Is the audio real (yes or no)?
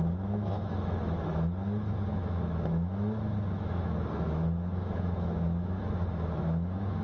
no